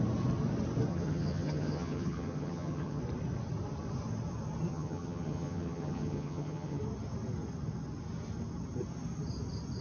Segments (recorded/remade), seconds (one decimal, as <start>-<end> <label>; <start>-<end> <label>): 0.0-0.9 recorded; 0.9-3.0 remade; 3.0-4.7 recorded; 4.7-6.8 remade; 6.8-9.8 recorded